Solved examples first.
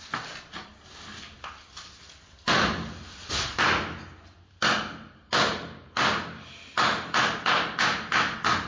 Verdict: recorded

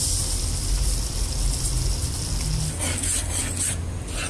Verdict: recorded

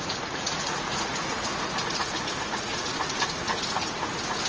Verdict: remade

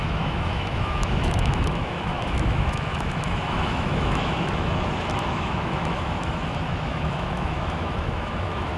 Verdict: remade